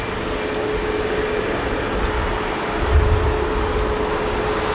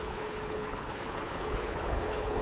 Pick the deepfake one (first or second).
second